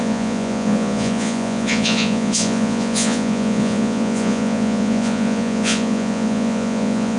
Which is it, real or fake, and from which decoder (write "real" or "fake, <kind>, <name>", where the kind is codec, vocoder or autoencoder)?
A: fake, vocoder, Vocos